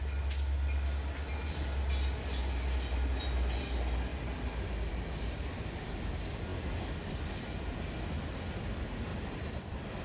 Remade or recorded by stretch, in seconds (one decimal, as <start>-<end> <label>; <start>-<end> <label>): 0.0-2.4 recorded; 2.4-3.2 remade; 3.2-4.1 recorded; 4.1-4.9 remade; 4.9-9.1 recorded; 9.1-10.0 remade